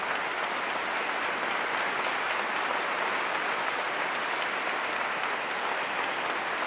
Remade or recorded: recorded